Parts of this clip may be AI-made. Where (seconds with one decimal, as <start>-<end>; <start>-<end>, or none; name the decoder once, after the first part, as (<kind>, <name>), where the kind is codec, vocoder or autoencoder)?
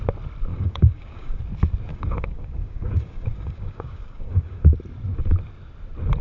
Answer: 0.5-1.4 (codec, DAC); 1.9-4.7